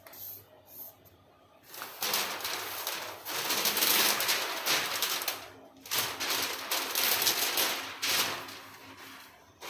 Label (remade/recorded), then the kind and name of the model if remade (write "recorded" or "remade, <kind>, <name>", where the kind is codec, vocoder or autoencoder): recorded